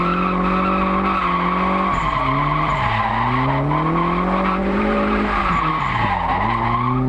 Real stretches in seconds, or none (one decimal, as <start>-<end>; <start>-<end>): 0.0-2.2; 3.1-4.6; 5.7-7.1